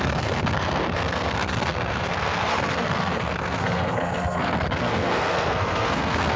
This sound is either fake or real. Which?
fake